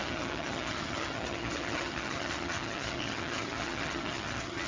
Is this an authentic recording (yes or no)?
no